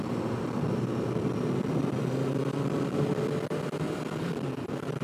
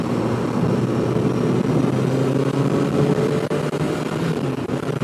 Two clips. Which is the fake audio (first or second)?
first